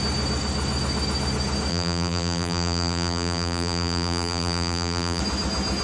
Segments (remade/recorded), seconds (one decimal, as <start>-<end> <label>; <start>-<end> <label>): 0.0-1.7 recorded; 1.7-5.2 remade; 5.2-5.8 recorded